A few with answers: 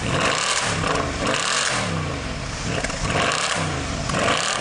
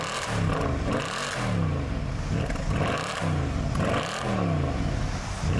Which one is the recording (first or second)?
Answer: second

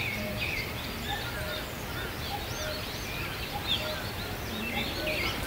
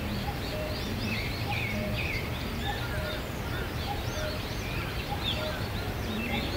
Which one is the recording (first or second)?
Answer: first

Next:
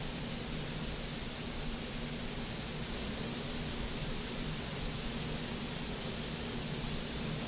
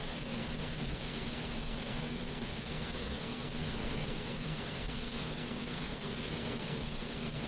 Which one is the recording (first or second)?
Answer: first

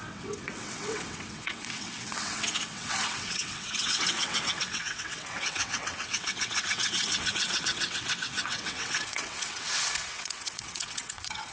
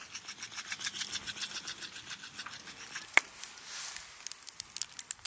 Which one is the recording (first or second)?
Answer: second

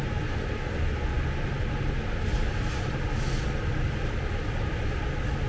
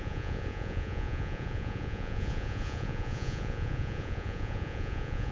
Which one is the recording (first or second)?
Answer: first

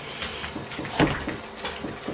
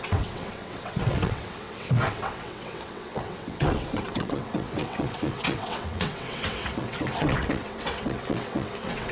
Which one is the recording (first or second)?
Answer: first